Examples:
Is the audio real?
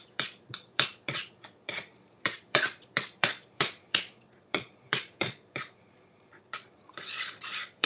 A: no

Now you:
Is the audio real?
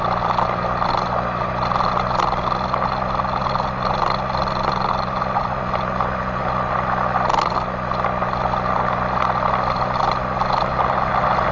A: yes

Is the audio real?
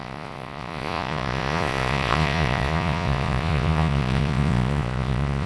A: no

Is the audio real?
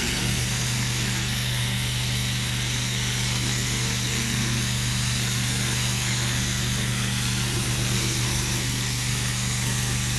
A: no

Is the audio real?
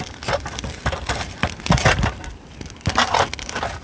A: yes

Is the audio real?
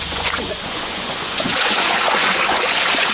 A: no